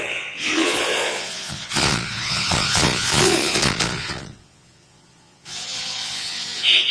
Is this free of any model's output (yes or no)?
no